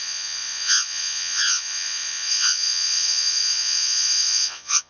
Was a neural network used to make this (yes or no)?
yes